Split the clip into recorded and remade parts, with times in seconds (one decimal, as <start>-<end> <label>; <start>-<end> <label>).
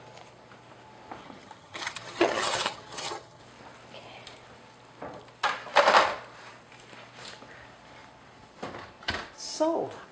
0.0-1.2 recorded; 1.2-3.4 remade; 3.4-10.1 recorded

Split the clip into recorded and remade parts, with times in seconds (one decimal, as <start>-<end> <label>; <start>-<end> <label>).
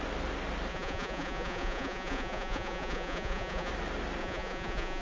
0.0-0.7 recorded; 0.7-3.7 remade; 3.7-4.2 recorded; 4.2-5.0 remade